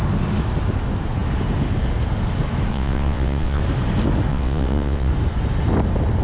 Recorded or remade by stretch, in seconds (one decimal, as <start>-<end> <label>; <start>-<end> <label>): 0.0-2.7 recorded; 2.7-3.6 remade; 3.6-4.3 recorded; 4.3-5.1 remade; 5.1-6.2 recorded